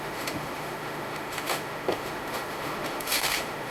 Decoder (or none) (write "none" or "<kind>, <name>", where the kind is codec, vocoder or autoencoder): autoencoder, DAC-VAE